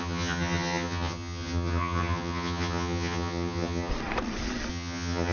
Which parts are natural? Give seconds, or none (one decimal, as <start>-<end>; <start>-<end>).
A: 3.9-4.7